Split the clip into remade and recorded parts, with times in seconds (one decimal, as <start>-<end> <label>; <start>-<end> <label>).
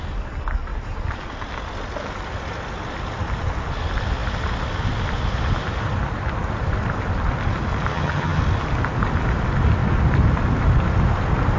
0.0-7.9 recorded; 7.9-8.4 remade; 8.4-11.6 recorded